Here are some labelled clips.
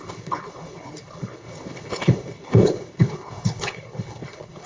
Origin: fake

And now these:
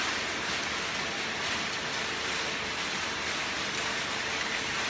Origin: real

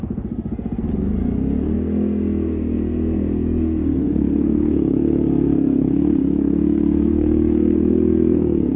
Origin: fake